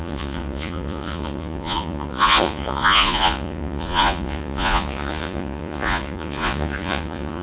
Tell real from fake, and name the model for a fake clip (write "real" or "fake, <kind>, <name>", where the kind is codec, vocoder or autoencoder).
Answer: fake, vocoder, Vocos